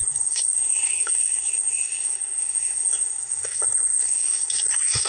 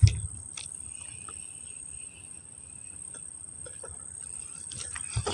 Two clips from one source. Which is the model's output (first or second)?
first